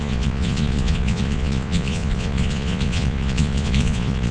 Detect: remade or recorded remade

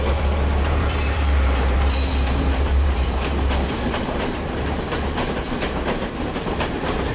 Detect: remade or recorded remade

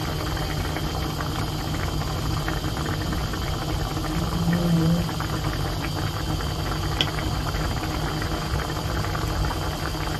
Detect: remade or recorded recorded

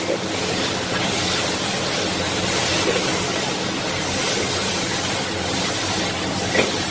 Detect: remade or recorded recorded